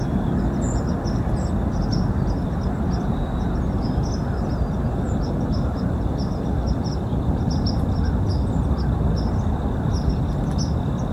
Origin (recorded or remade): recorded